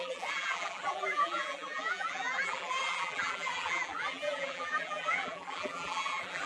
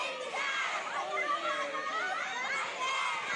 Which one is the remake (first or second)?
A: first